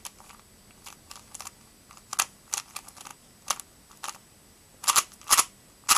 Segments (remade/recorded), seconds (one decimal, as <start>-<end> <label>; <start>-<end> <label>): 0.0-6.0 recorded